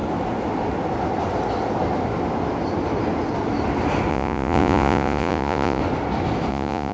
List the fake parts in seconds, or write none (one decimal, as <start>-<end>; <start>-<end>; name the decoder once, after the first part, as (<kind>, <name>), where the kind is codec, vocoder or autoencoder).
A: 4.1-5.8 (vocoder, Vocos); 6.5-6.9